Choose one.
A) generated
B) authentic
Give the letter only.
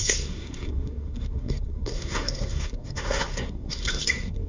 A